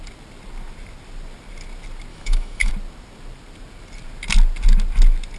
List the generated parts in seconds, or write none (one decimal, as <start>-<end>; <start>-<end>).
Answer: 2.1-2.7